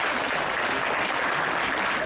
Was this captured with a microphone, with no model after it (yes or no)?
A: yes